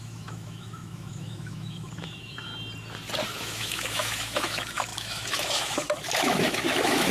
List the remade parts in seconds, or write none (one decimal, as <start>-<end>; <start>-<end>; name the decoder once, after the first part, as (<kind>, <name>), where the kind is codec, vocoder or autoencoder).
0.0-2.5 (autoencoder, DAC-VAE); 3.4-7.1